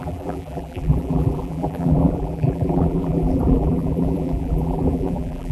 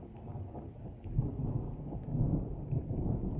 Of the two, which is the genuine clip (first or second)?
second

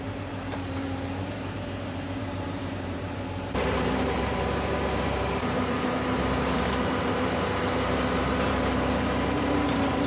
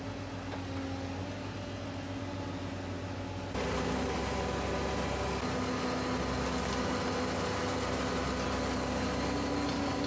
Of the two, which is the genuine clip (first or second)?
second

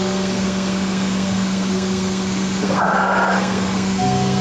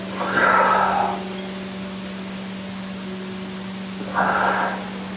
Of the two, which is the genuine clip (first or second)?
second